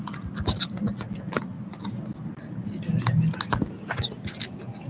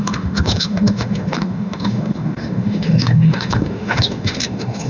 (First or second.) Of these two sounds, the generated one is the second